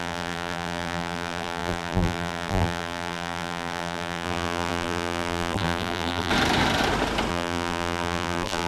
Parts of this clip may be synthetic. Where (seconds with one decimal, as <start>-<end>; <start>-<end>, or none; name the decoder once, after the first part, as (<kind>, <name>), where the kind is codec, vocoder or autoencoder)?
0.0-6.3 (vocoder, BigVGAN v2); 7.3-8.7